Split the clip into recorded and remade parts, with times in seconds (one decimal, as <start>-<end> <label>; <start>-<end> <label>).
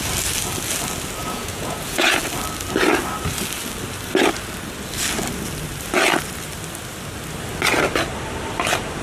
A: 0.0-1.2 recorded; 1.2-2.2 remade; 2.2-9.0 recorded